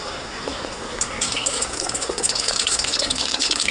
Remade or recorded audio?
remade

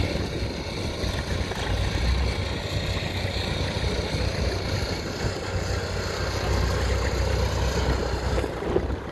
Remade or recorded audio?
recorded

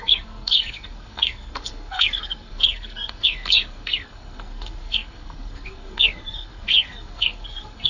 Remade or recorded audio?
remade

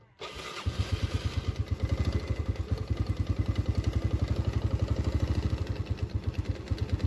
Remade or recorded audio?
recorded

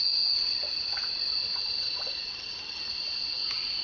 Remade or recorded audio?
recorded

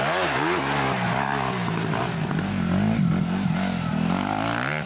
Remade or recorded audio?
recorded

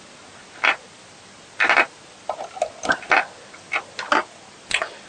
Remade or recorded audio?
recorded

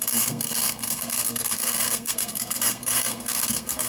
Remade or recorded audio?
remade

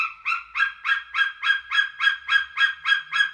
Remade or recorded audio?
recorded